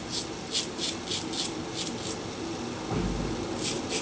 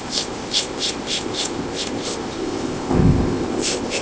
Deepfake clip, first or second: second